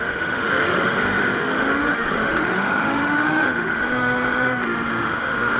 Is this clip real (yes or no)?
no